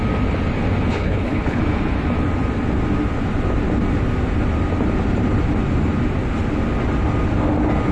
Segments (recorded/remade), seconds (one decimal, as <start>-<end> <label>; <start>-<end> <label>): 0.0-0.9 recorded; 0.9-1.6 remade; 1.6-7.9 recorded